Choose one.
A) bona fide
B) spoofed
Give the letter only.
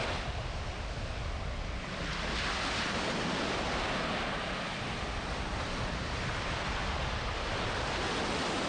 A